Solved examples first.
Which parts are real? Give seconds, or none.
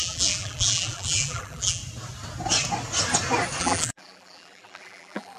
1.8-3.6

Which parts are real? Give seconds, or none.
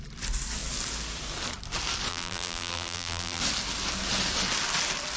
0.0-2.1; 3.4-5.2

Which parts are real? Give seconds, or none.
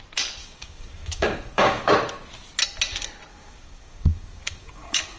0.0-0.4; 1.9-3.3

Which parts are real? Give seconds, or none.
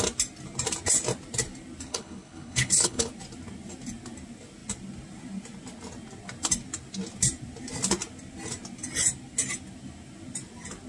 0.0-1.9; 3.1-10.9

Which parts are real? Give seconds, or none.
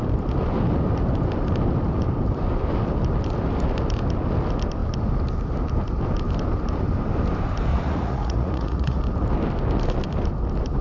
0.0-7.7; 9.0-10.8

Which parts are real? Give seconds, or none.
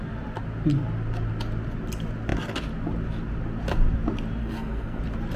0.0-4.4; 5.0-5.4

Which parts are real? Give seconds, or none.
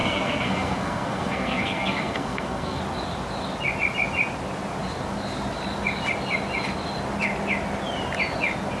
2.8-8.8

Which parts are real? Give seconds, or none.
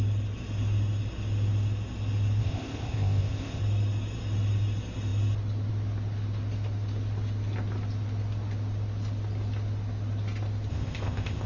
0.0-2.4; 3.6-10.7